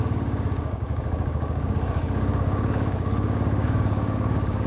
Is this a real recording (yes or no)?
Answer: no